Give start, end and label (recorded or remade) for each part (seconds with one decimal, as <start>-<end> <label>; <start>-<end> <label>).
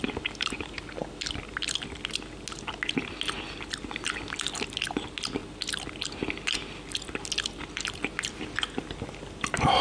0.0-9.8 recorded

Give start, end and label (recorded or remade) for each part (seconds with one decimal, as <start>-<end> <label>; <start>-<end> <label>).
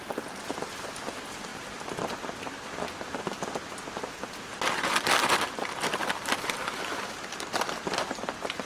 0.0-8.7 recorded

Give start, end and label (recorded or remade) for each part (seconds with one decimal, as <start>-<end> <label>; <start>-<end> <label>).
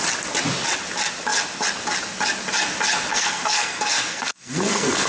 0.0-3.1 recorded; 3.1-5.1 remade